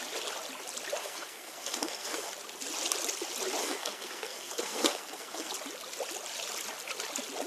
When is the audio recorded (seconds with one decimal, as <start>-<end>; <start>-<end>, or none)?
0.0-1.0; 2.3-3.6; 5.5-7.5